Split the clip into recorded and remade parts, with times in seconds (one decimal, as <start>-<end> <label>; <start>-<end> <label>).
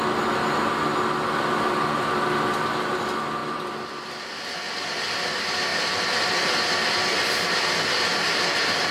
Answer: 0.0-3.4 recorded; 3.4-4.1 remade; 4.1-5.7 recorded; 5.7-8.4 remade; 8.4-8.9 recorded